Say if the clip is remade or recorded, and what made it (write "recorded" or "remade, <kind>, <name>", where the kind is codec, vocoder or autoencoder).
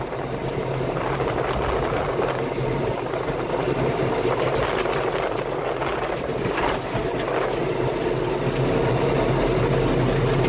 recorded